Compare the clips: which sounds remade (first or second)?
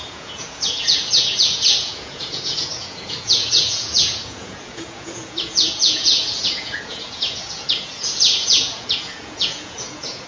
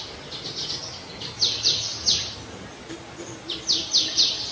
first